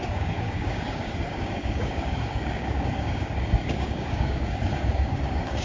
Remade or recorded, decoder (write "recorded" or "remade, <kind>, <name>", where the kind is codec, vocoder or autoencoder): remade, codec, DAC